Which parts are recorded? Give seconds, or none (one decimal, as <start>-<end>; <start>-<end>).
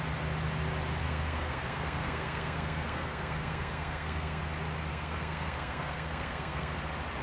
0.0-1.0; 4.4-4.9; 6.8-7.2